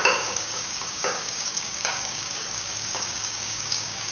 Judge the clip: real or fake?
fake